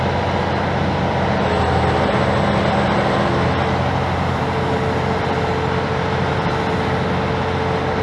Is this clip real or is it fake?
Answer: real